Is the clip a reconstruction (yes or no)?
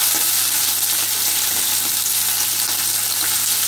no